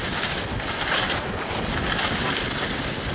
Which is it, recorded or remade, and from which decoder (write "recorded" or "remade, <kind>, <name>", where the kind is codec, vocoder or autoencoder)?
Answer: recorded